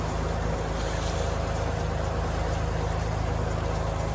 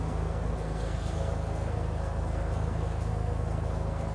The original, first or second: first